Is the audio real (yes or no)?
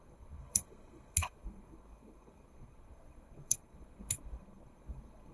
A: no